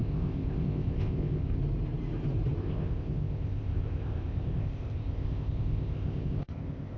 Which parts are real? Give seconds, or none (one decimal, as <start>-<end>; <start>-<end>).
1.6-2.6